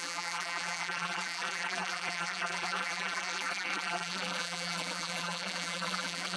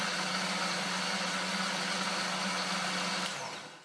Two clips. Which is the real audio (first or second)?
second